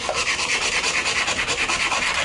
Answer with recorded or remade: recorded